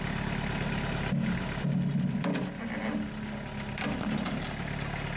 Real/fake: real